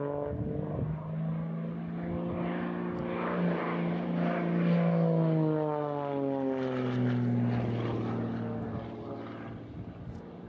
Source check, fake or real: real